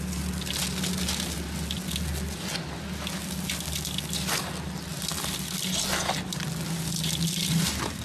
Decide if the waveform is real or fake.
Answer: real